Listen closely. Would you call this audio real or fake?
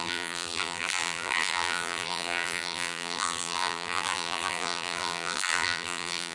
fake